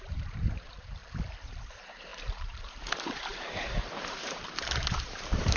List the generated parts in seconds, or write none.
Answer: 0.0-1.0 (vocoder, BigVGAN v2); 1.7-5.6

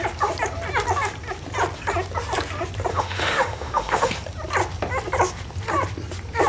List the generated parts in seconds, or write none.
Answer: 2.9-4.1 (autoencoder, DAC-VAE)

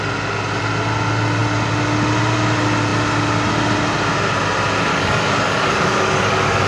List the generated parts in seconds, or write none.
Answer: 4.9-6.7 (codec, DAC)

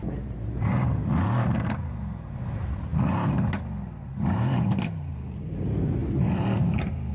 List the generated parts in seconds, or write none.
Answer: 0.0-1.0 (vocoder, BigVGAN v2); 1.9-2.9; 4.1-6.0

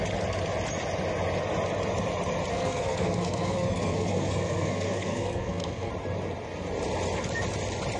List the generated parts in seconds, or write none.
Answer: 2.5-5.9 (codec, SNAC)

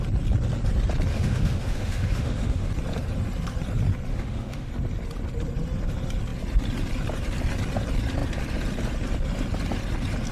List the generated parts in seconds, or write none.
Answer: 1.1-2.7 (autoencoder, DAC-VAE); 4.1-4.7

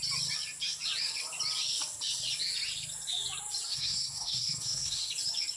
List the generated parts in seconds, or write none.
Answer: 3.7-5.1 (codec, SNAC)